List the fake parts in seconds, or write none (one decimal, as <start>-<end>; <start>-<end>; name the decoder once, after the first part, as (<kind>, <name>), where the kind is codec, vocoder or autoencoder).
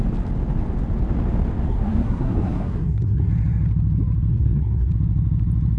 1.7-3.3 (codec, SNAC); 4.3-4.9